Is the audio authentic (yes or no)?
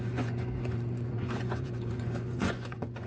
no